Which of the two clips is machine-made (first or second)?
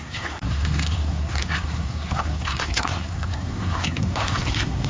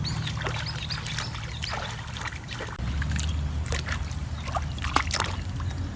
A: first